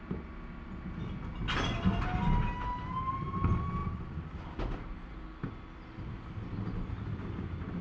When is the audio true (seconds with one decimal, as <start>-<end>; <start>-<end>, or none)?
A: 0.0-7.8